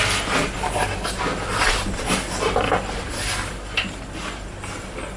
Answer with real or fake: real